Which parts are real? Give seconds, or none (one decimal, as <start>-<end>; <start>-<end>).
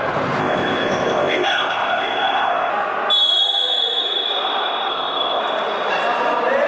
0.0-0.4; 2.7-4.9; 5.4-6.7